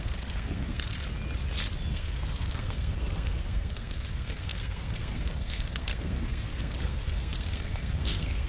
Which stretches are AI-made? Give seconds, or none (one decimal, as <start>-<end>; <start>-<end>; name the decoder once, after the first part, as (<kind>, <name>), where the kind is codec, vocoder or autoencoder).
0.0-1.1 (codec, SNAC); 1.9-8.5